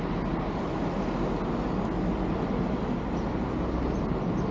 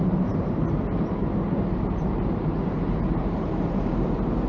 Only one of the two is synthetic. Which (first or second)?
second